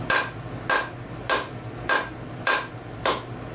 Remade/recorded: recorded